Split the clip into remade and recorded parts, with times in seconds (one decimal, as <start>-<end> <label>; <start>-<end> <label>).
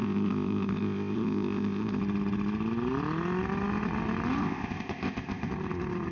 0.0-2.0 remade; 2.0-4.4 recorded; 4.4-5.5 remade; 5.5-6.1 recorded